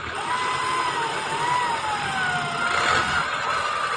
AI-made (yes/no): no